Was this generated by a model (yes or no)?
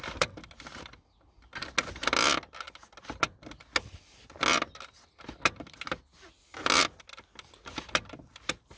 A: no